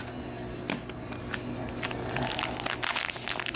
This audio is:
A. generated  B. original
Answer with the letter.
B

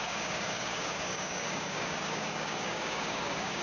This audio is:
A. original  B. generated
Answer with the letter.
B